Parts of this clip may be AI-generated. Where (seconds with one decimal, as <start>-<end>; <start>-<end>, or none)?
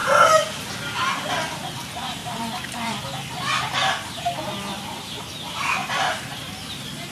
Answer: 2.2-5.2; 5.8-7.1